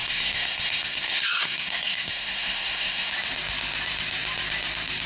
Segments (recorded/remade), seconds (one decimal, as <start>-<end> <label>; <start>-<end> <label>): 0.0-3.1 remade; 3.1-5.1 recorded